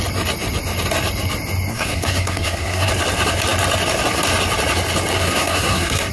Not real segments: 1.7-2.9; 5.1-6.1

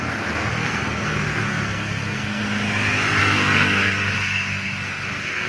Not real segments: 0.0-2.4; 3.2-5.5